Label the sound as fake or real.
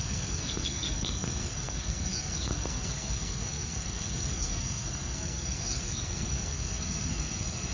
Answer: fake